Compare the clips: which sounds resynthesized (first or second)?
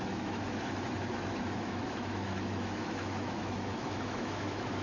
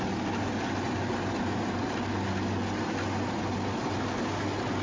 first